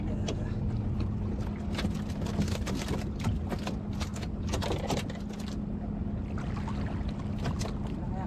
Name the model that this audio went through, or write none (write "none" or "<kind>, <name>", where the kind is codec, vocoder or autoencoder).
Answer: none